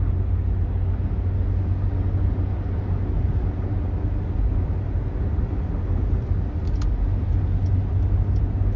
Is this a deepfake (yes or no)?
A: no